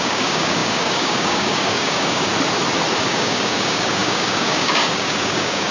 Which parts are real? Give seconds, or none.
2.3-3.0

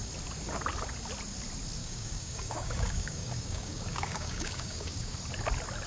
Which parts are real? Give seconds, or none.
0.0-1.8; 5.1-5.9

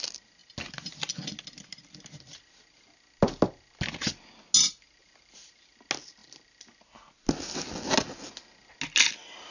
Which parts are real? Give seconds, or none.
0.0-9.5